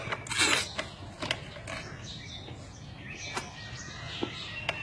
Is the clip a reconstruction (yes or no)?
no